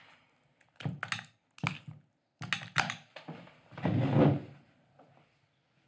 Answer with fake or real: real